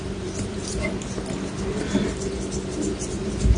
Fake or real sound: real